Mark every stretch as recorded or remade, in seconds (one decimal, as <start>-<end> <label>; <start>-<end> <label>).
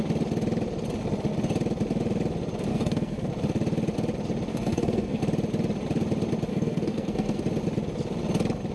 0.0-2.7 recorded; 2.7-3.3 remade; 3.3-4.5 recorded; 4.5-5.2 remade; 5.2-6.5 recorded; 6.5-7.4 remade; 7.4-8.7 recorded